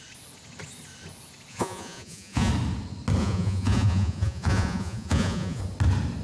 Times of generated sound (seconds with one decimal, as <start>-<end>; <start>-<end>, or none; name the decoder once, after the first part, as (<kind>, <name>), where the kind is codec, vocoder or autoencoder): 1.5-2.5 (vocoder, Vocos); 3.2-5.6